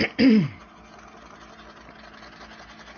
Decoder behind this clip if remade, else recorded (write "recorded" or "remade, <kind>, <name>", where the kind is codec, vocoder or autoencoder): recorded